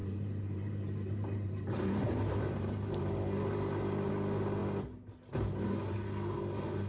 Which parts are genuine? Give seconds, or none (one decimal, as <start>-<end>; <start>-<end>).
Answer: 4.1-6.9